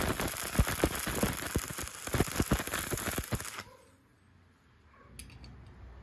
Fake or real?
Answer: real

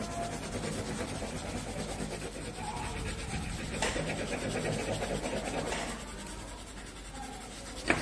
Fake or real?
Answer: real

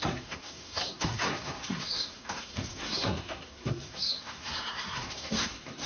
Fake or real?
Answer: fake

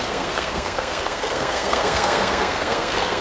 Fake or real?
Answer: fake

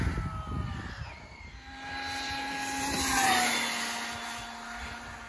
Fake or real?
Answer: real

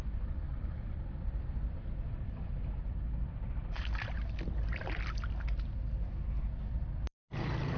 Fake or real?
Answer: real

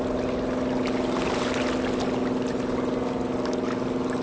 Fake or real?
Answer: real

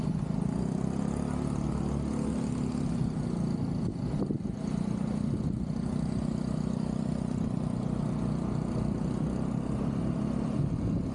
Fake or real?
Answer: real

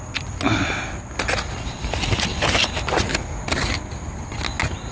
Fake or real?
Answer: real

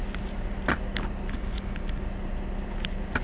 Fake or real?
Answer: real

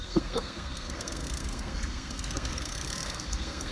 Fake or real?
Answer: fake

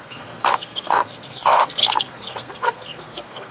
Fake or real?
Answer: fake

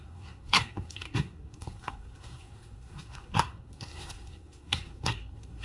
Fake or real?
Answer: fake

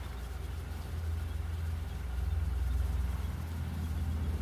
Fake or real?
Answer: real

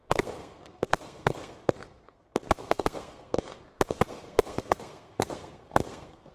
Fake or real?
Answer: fake